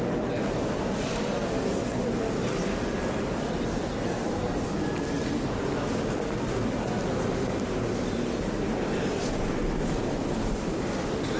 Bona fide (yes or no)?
yes